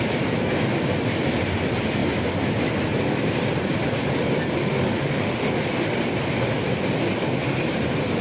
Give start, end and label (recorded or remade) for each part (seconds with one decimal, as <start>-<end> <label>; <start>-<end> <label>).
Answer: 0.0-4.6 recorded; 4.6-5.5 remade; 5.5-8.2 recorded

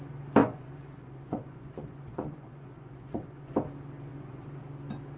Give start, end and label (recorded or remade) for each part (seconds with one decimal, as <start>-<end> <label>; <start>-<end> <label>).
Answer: 0.0-0.4 recorded; 0.4-3.5 remade; 3.5-4.1 recorded; 4.1-4.6 remade; 4.6-5.2 recorded

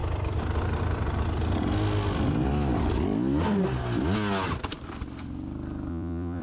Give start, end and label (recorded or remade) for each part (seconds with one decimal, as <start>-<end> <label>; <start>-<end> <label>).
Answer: 0.0-5.9 recorded; 5.9-6.4 remade

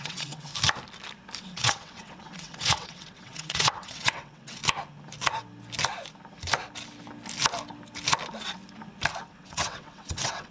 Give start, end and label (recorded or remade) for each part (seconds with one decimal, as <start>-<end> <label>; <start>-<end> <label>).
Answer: 0.0-0.5 remade; 0.5-1.4 recorded; 1.4-4.6 remade; 4.6-9.3 recorded; 9.3-10.5 remade

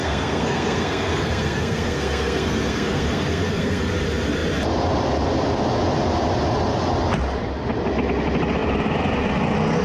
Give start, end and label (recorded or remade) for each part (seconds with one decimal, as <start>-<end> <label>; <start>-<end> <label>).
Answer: 0.0-3.9 remade; 3.9-9.8 recorded

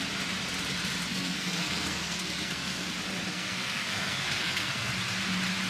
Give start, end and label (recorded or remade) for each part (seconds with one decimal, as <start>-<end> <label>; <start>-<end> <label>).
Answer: 0.0-1.1 recorded; 1.1-2.9 remade; 2.9-3.3 recorded; 3.3-4.9 remade; 4.9-5.7 recorded